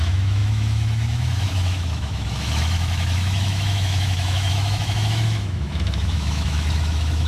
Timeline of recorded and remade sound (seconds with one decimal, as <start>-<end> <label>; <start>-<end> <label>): 0.0-7.3 remade